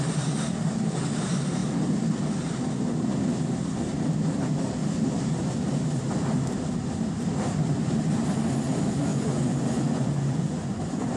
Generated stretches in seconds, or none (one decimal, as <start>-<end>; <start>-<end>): 9.1-11.2